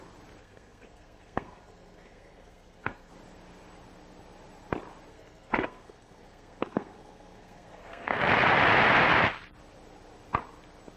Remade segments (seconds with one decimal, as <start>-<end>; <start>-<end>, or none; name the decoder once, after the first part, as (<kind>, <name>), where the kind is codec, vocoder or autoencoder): 0.4-3.1 (codec, SNAC); 5.1-8.2